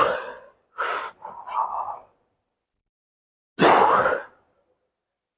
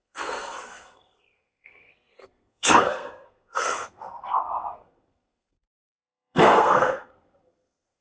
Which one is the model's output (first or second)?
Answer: second